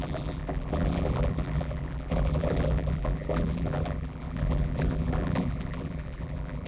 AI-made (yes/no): yes